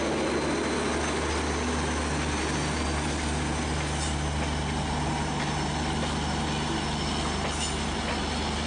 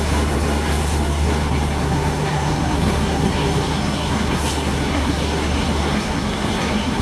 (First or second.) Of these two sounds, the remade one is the second